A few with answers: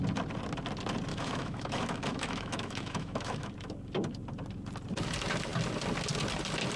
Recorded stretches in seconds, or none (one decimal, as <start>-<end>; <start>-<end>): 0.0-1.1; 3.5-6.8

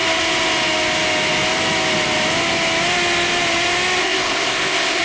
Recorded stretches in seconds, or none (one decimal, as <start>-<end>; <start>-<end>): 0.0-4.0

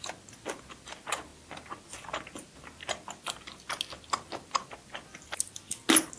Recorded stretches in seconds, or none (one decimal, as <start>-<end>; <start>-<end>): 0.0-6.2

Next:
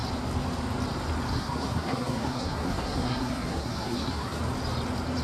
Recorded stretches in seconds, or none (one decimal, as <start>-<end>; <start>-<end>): 0.0-1.3; 4.4-5.2

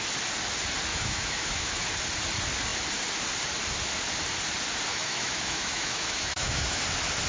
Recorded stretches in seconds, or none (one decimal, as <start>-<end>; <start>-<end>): 0.0-0.9; 1.9-4.9; 6.8-7.3

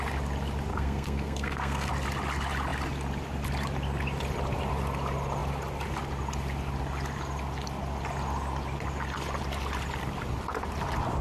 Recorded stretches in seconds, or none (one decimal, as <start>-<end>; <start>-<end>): 0.0-0.7; 1.9-11.2